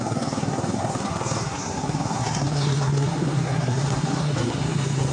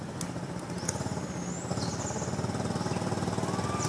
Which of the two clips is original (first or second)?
second